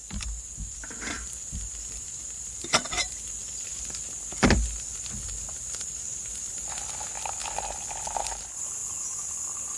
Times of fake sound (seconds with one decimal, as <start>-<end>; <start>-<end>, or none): 0.0-3.7; 8.8-9.8